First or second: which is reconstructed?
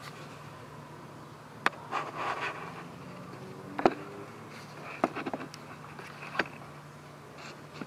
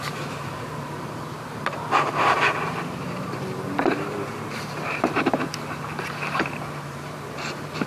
second